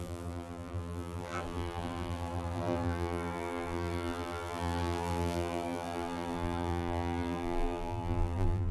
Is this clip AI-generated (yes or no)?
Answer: yes